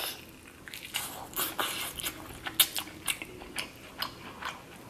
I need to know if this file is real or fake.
real